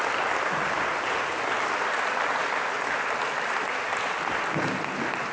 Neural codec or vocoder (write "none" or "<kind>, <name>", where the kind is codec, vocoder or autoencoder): none